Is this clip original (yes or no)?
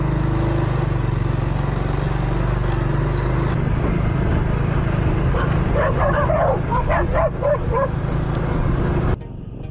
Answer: yes